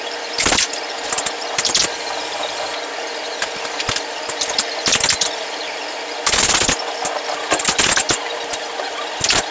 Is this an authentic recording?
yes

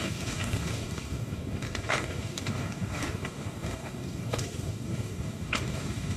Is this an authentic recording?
no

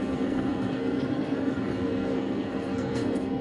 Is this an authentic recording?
no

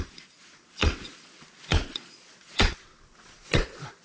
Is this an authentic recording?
no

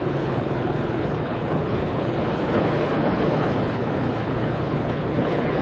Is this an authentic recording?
no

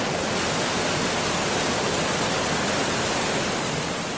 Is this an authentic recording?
yes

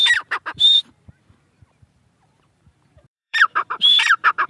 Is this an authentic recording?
no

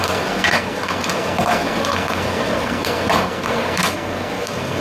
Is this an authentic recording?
no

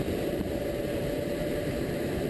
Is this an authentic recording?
no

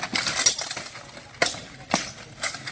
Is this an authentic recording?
yes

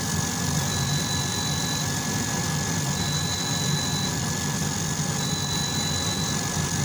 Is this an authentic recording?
no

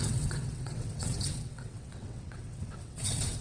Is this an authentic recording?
no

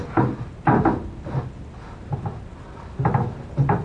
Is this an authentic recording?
yes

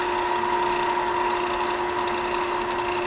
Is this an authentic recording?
yes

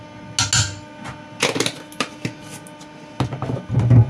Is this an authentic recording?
yes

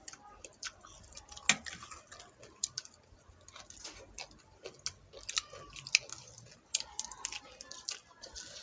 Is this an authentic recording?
yes